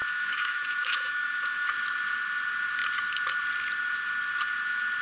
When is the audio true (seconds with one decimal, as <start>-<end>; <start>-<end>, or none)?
1.7-5.0